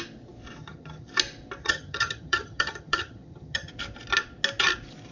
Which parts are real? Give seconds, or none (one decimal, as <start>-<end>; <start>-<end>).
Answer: 0.0-0.6; 1.1-1.6; 3.7-5.1

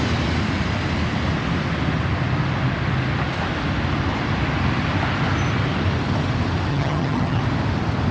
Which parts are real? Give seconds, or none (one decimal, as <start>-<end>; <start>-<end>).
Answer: 0.0-6.7; 7.4-8.1

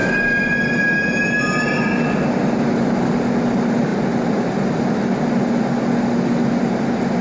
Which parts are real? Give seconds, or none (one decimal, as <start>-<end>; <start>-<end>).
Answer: 0.0-7.2

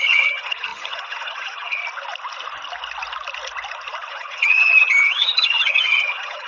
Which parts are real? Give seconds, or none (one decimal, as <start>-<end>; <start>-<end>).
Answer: 1.8-4.1

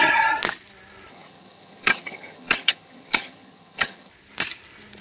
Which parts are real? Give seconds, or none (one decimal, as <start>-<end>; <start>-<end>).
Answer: 0.0-1.1; 4.1-5.0

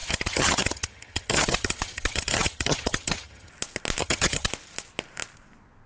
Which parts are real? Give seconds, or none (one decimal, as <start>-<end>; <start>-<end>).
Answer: 3.5-4.0; 4.5-5.9

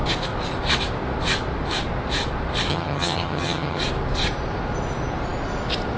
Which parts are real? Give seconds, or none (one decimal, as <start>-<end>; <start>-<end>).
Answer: 0.0-2.7; 3.8-6.0

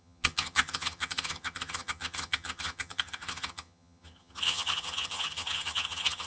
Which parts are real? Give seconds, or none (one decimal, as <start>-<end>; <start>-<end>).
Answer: none